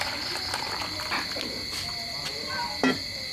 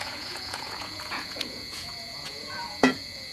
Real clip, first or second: first